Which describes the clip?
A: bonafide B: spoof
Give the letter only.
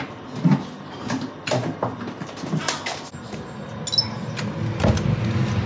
A